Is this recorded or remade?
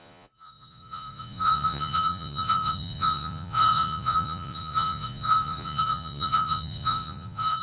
remade